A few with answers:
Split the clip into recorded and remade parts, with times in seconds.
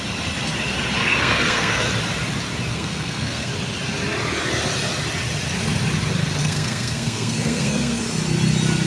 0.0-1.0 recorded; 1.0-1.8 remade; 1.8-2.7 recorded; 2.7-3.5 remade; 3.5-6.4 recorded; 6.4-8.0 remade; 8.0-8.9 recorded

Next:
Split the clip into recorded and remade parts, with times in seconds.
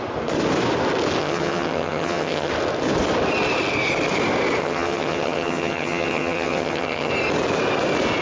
0.0-1.2 recorded; 1.2-2.5 remade; 2.5-4.6 recorded; 4.6-7.1 remade; 7.1-8.2 recorded